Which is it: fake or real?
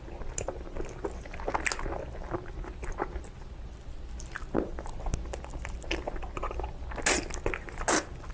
real